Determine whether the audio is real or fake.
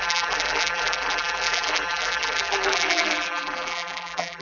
fake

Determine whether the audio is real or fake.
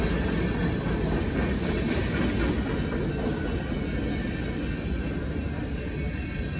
real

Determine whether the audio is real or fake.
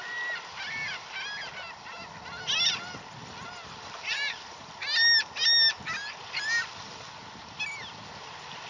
real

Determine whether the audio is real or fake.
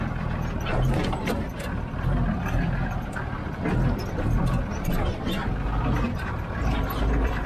real